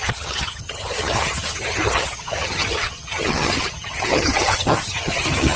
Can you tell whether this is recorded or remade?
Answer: remade